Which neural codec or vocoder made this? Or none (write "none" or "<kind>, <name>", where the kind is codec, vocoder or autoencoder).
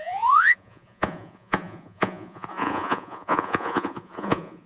vocoder, Vocos